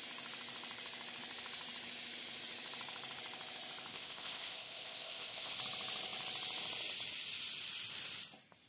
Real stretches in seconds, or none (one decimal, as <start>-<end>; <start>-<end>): 0.0-3.9; 5.6-8.7